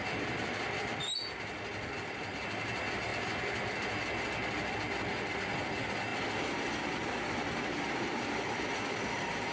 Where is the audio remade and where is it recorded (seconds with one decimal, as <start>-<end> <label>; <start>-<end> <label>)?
0.0-9.5 recorded